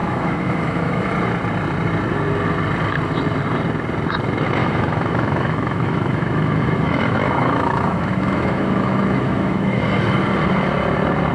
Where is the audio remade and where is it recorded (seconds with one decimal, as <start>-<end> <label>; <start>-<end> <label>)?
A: 0.0-1.1 remade; 1.1-4.6 recorded; 4.6-9.8 remade; 9.8-11.3 recorded